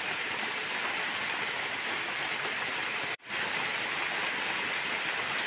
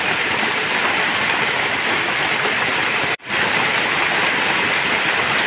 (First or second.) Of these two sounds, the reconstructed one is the second